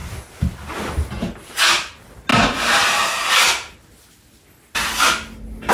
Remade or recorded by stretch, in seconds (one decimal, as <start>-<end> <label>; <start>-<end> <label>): 0.0-5.7 recorded